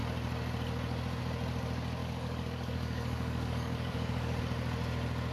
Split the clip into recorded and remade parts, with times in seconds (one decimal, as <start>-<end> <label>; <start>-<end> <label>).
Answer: 0.0-2.0 recorded; 2.0-4.4 remade; 4.4-5.3 recorded